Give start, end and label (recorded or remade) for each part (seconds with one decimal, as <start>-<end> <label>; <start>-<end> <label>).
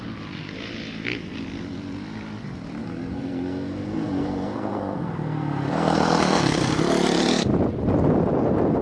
0.0-2.8 recorded; 2.8-6.7 remade; 6.7-8.8 recorded